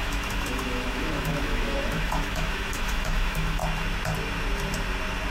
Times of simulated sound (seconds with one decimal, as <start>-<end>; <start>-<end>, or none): 0.0-3.6